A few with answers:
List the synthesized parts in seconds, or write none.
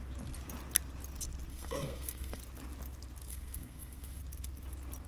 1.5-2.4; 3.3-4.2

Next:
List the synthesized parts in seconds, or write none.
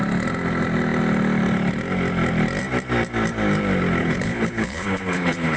4.0-5.6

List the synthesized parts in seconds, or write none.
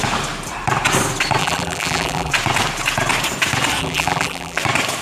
1.4-2.3; 3.8-4.6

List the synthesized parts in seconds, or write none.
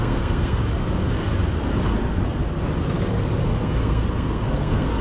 0.0-0.6; 3.6-5.0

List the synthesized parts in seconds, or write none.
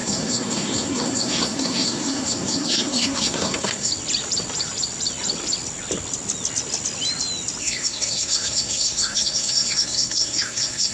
0.0-3.9; 7.6-10.9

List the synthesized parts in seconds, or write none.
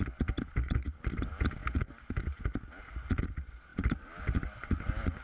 3.7-4.8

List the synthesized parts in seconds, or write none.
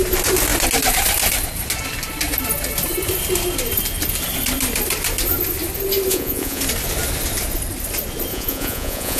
6.1-6.6; 8.3-9.2